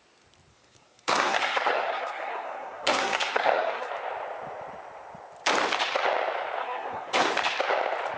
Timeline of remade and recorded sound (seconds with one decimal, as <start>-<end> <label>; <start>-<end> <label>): 0.0-0.5 recorded; 0.5-3.9 remade; 3.9-6.6 recorded; 6.6-7.3 remade; 7.3-8.2 recorded